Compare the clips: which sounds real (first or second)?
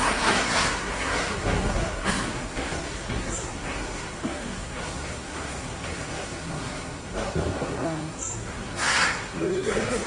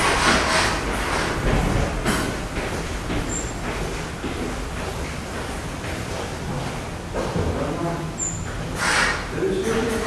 second